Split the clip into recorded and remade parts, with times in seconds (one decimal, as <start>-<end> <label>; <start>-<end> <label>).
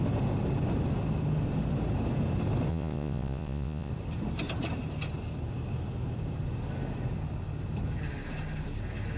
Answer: 0.0-2.7 recorded; 2.7-3.9 remade; 3.9-9.2 recorded